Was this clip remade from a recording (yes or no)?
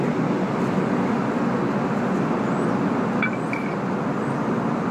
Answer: no